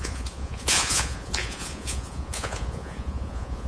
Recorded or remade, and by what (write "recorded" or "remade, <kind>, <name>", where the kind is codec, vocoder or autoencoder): remade, vocoder, Vocos